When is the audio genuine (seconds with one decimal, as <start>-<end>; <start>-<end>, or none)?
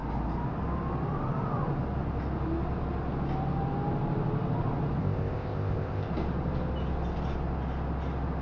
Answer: 0.0-5.0; 6.1-8.4